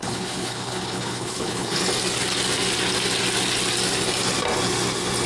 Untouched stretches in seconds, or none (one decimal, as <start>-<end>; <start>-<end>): 1.8-5.3